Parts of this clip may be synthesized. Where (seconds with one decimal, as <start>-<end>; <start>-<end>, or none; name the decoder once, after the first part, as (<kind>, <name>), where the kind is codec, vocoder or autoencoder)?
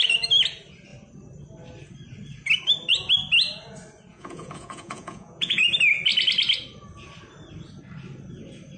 4.1-5.6 (vocoder, Vocos)